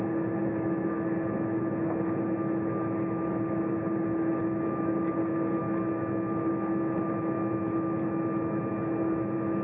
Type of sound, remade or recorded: recorded